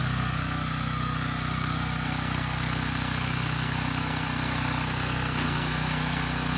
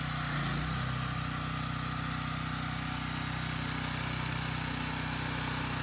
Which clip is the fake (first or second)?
first